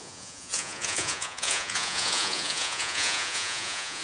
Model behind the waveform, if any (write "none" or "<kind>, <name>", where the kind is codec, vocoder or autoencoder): vocoder, Vocos